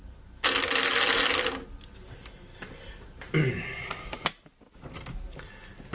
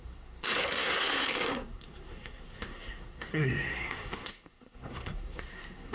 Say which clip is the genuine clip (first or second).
first